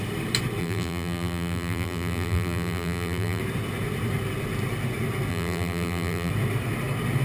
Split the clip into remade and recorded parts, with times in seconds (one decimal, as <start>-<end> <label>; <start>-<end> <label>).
0.0-0.6 recorded; 0.6-3.4 remade; 3.4-5.3 recorded; 5.3-6.3 remade; 6.3-7.2 recorded